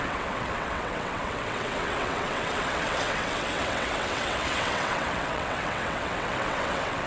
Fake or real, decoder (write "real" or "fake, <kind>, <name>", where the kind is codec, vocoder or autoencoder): fake, vocoder, WaveNeXt